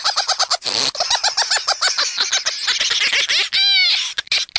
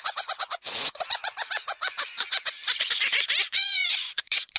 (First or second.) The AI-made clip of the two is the second